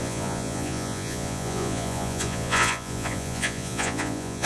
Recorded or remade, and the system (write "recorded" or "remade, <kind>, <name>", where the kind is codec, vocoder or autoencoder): remade, vocoder, Vocos